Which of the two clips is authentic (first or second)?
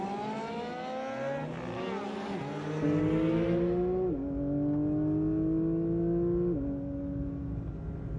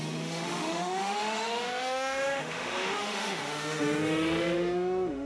first